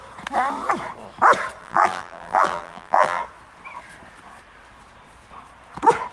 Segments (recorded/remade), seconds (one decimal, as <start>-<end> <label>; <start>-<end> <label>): 0.0-1.6 recorded; 1.6-3.2 remade; 3.2-6.1 recorded